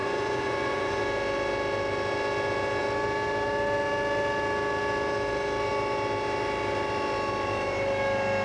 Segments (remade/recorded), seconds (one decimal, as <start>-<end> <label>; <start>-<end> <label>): 0.0-1.0 remade; 1.0-8.4 recorded